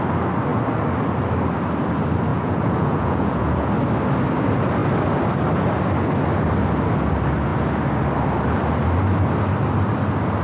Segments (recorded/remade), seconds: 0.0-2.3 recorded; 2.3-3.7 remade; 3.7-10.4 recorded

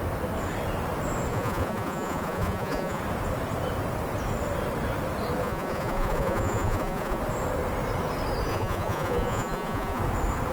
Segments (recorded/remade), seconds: 0.0-1.3 recorded; 1.3-3.0 remade; 3.0-5.4 recorded; 5.4-7.2 remade; 7.2-8.5 recorded; 8.5-10.0 remade; 10.0-10.5 recorded

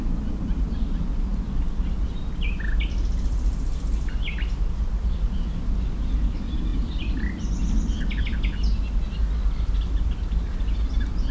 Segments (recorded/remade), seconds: 0.0-11.3 recorded

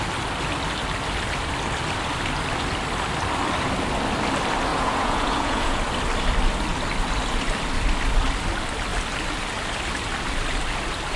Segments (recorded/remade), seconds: 0.0-4.7 recorded; 4.7-5.8 remade; 5.8-11.2 recorded

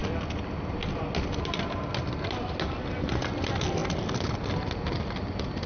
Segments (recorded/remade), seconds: 0.0-5.7 recorded

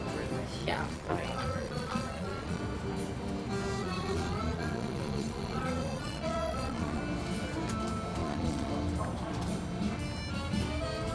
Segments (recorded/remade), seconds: 0.0-0.6 recorded; 0.6-2.6 remade; 2.6-3.8 recorded; 3.8-7.0 remade; 7.0-8.2 recorded; 8.2-8.7 remade; 8.7-11.1 recorded